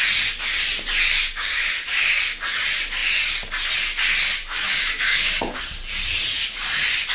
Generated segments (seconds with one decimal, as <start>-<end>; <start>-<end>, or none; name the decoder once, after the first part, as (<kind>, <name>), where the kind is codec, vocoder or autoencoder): 1.2-2.2 (codec, DAC); 4.7-5.6

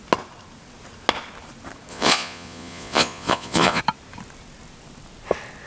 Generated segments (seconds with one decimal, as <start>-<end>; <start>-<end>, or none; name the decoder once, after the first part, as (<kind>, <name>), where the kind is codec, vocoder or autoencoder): 1.9-3.8 (vocoder, Vocos)

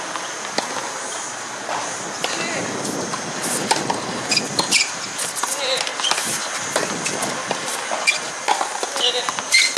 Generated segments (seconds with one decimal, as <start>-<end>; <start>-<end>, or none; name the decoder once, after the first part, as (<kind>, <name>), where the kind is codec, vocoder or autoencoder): none

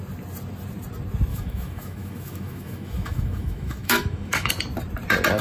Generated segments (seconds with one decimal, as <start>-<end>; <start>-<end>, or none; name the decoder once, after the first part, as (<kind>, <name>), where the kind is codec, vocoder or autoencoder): 1.3-4.5 (autoencoder, DAC-VAE)

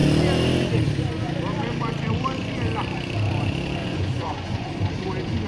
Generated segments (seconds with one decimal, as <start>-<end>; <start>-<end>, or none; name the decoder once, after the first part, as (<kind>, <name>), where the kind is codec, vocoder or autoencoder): 3.8-4.7 (vocoder, Vocos)